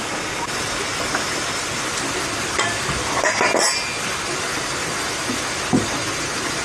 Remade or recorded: recorded